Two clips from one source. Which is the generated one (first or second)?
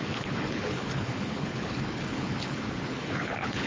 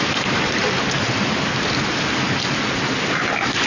first